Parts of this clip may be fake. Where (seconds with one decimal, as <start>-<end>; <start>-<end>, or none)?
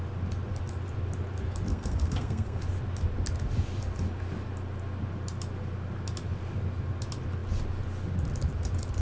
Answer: 1.7-2.6